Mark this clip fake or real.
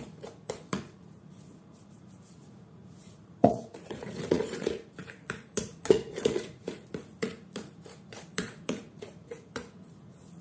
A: fake